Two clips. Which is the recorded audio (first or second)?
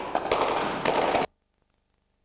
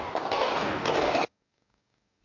first